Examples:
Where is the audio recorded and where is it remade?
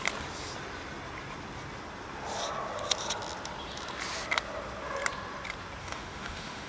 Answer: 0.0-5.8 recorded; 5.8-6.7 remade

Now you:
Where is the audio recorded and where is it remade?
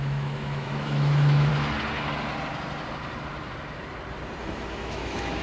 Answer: 0.0-1.5 remade; 1.5-4.4 recorded; 4.4-5.4 remade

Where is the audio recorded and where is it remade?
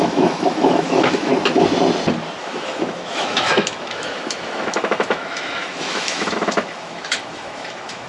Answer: 0.0-1.3 remade; 1.3-2.4 recorded; 2.4-8.1 remade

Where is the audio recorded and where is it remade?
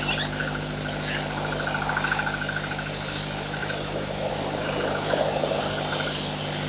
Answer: 0.0-3.6 recorded; 3.6-4.3 remade; 4.3-6.7 recorded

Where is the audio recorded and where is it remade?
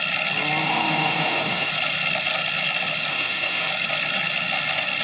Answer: 0.0-0.6 recorded; 0.6-1.7 remade; 1.7-3.1 recorded; 3.1-3.7 remade; 3.7-5.0 recorded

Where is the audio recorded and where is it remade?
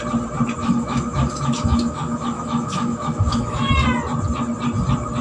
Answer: 0.0-0.6 recorded; 0.6-3.7 remade; 3.7-5.2 recorded